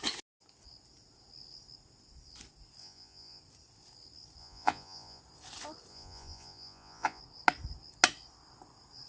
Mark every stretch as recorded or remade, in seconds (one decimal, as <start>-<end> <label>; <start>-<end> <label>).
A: 0.0-2.8 recorded; 2.8-3.4 remade; 3.4-4.4 recorded; 4.4-5.2 remade; 5.2-5.9 recorded; 5.9-7.2 remade; 7.2-9.1 recorded